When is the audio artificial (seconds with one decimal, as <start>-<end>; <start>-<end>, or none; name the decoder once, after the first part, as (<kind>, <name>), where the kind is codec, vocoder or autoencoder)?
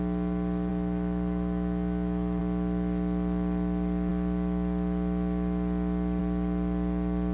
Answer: 0.7-2.4 (autoencoder, DAC-VAE)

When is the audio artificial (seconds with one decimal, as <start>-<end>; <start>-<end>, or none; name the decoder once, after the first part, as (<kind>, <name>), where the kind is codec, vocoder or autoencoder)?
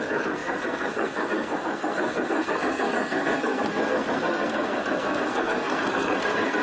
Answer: 0.0-6.6 (codec, SNAC)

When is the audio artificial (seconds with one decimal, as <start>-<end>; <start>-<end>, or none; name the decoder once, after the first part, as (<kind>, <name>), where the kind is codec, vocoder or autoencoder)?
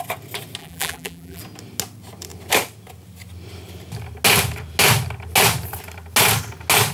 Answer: 0.6-1.4 (vocoder, BigVGAN v2)